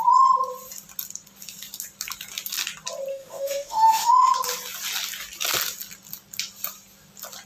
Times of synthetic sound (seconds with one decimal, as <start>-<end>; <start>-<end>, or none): 3.1-4.3